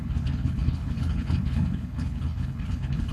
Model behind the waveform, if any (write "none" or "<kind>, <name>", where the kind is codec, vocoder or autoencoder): codec, HILCodec